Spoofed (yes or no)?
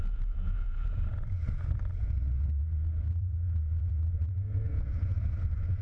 yes